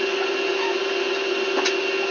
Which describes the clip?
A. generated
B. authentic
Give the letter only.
B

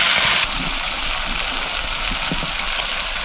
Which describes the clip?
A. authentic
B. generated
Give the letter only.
A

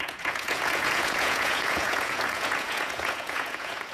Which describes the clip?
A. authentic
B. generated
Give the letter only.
B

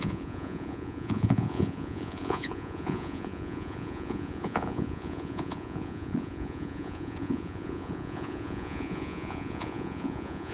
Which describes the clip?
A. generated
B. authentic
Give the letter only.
A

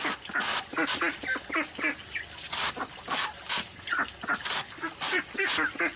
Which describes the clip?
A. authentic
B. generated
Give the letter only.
A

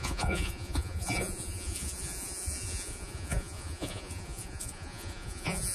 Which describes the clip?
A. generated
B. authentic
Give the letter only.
A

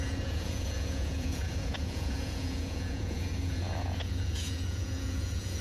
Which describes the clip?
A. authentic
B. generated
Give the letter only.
B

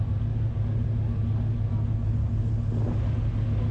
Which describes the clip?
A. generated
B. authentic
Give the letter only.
B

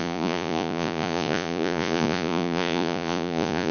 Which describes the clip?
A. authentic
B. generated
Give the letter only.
B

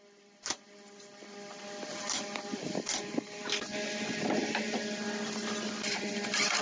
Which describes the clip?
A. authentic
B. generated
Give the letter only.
A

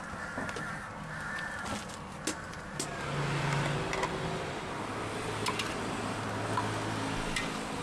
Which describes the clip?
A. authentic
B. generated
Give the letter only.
A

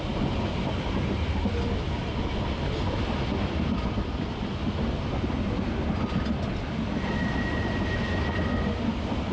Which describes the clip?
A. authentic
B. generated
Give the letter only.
A